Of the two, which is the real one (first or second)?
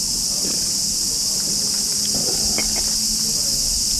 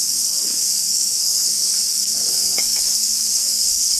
first